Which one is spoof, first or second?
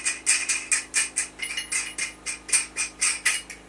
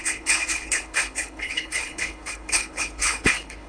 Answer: second